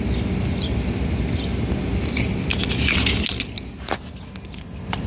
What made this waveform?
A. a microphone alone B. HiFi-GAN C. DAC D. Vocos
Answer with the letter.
A